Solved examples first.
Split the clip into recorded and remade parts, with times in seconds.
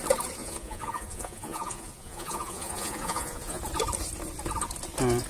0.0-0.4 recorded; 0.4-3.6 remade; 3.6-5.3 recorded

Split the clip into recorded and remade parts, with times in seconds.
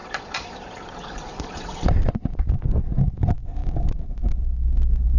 0.0-1.8 remade; 1.8-5.2 recorded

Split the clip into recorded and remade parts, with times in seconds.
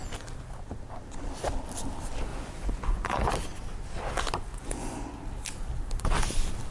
0.0-2.3 recorded; 2.3-3.3 remade; 3.3-4.5 recorded; 4.5-5.2 remade; 5.2-6.7 recorded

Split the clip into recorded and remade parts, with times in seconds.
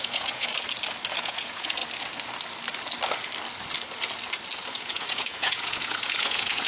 0.0-0.5 remade; 0.5-1.1 recorded; 1.1-1.8 remade; 1.8-4.7 recorded; 4.7-6.7 remade